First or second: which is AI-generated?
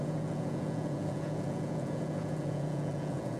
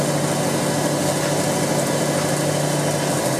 first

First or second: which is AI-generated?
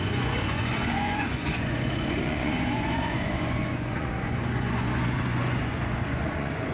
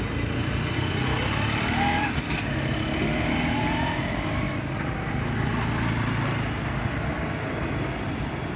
first